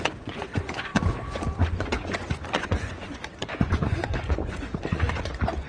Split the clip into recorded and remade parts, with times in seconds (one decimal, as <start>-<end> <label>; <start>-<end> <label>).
0.0-5.7 remade